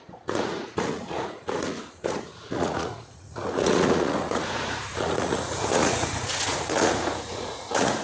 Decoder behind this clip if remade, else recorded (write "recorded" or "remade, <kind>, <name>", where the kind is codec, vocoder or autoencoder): remade, vocoder, Vocos